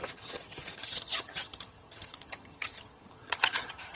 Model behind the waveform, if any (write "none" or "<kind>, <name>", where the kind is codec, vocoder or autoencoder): vocoder, HiFi-GAN